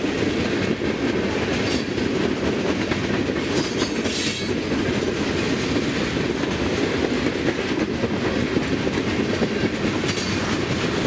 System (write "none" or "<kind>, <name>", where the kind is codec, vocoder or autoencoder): none